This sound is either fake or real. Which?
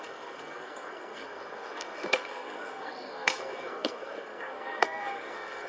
fake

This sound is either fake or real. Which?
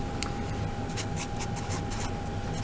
real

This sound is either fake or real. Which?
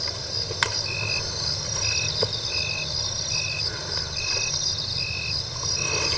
real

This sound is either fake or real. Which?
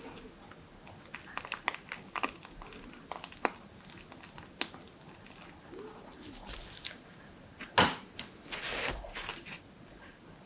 real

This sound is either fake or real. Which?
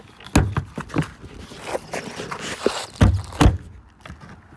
real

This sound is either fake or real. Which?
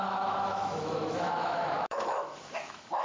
fake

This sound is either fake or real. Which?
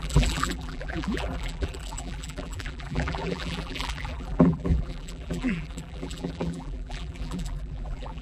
fake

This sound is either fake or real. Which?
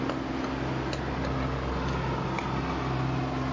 real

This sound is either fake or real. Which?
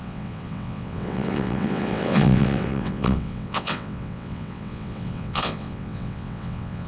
fake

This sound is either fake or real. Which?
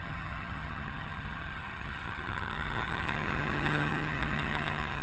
fake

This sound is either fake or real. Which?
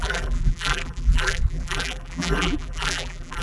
fake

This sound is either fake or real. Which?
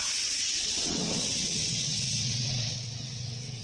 fake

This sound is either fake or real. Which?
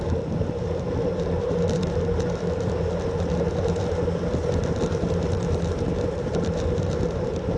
fake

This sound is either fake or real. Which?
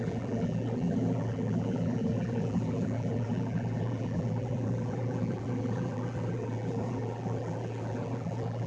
fake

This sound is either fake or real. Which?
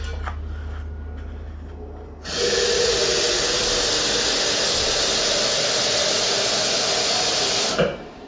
real